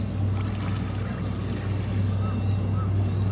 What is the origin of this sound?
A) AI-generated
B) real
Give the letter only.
B